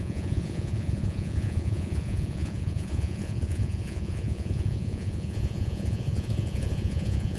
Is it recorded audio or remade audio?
remade